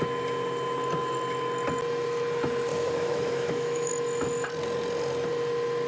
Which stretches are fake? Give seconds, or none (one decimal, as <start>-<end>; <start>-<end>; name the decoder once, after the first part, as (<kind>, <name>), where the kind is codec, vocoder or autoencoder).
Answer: 2.7-3.9 (autoencoder, DAC-VAE)